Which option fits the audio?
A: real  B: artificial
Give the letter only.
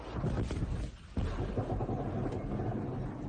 A